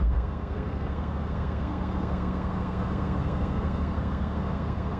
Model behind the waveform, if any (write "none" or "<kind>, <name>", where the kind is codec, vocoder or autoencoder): codec, SNAC